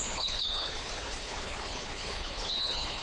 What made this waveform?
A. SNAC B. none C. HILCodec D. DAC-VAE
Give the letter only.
C